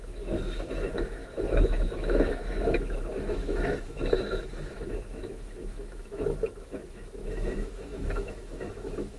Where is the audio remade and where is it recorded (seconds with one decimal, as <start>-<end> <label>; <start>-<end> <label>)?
0.0-9.2 remade